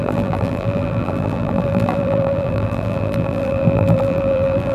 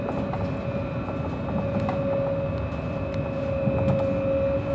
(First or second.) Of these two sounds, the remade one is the first